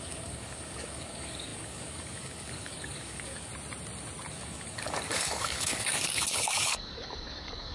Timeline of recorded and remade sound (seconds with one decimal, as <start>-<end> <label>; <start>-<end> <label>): 0.0-3.5 remade; 3.5-4.3 recorded; 4.3-7.7 remade